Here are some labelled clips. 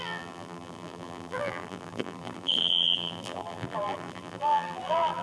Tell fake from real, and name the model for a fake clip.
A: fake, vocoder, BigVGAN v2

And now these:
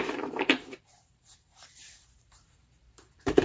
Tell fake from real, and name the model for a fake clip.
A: fake, vocoder, BigVGAN v2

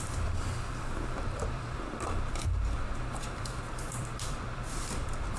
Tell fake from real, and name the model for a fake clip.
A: fake, vocoder, BigVGAN v2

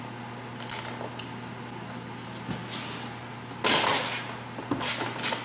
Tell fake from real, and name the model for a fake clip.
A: real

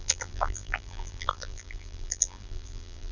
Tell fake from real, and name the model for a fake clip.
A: fake, vocoder, BigVGAN v2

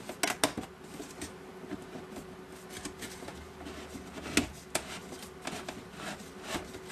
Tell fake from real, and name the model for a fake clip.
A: real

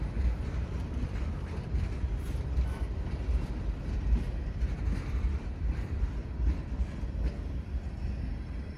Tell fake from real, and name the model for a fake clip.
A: fake, vocoder, BigVGAN v2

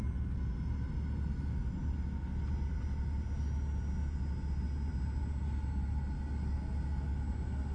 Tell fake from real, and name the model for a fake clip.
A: real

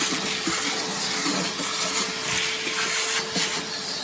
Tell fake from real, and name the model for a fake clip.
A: real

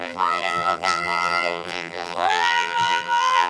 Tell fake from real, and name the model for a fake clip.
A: fake, vocoder, BigVGAN v2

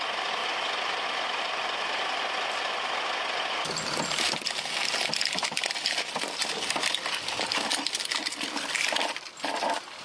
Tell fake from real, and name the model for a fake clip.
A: fake, vocoder, BigVGAN v2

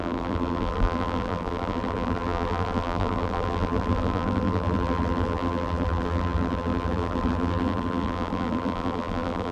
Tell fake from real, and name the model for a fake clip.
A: fake, vocoder, BigVGAN v2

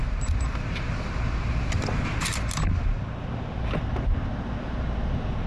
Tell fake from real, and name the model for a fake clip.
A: fake, vocoder, BigVGAN v2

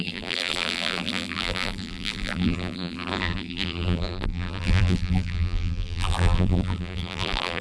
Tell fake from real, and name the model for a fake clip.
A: fake, vocoder, BigVGAN v2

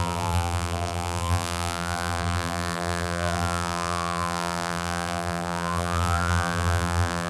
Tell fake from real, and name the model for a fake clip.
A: fake, vocoder, BigVGAN v2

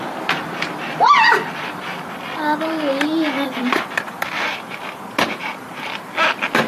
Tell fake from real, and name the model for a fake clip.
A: fake, vocoder, BigVGAN v2